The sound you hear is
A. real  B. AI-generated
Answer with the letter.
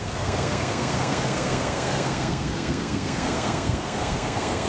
B